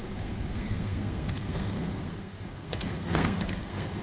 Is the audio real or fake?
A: fake